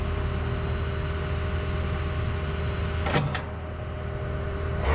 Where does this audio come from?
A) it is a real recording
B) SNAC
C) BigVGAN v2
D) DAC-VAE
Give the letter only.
A